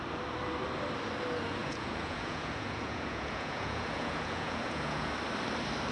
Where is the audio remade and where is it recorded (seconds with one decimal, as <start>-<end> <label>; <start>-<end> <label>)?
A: 0.0-1.6 recorded; 1.6-5.1 remade; 5.1-5.9 recorded